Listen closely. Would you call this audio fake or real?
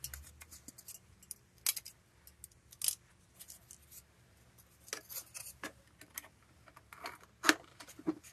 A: real